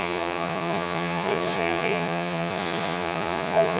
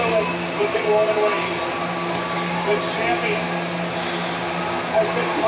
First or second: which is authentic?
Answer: second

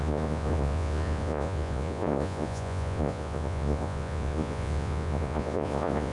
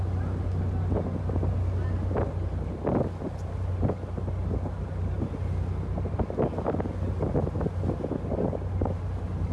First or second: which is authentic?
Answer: second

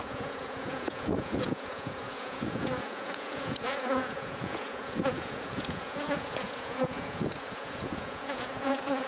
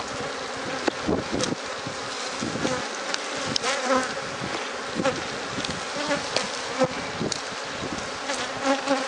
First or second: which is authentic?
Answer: second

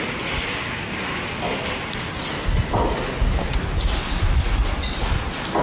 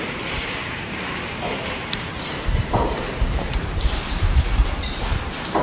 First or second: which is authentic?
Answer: first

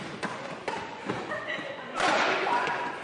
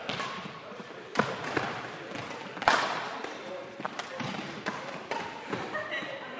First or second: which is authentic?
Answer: second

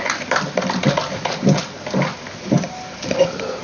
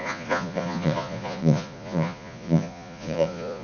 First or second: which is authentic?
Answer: first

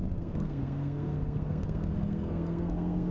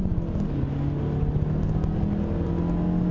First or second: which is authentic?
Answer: second